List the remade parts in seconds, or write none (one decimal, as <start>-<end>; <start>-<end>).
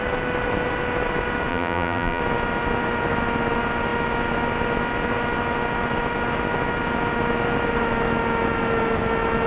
1.5-2.2